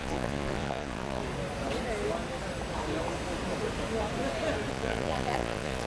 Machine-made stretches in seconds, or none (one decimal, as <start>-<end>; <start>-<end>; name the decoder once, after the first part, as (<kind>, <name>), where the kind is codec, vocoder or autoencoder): 0.0-1.2 (vocoder, Vocos); 4.7-5.9